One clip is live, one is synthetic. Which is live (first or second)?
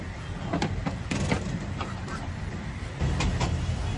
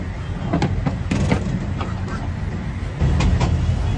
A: second